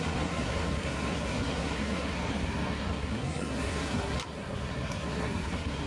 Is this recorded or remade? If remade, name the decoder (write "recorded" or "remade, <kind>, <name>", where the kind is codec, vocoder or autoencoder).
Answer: remade, codec, SNAC